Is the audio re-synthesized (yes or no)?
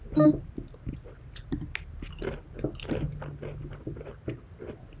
no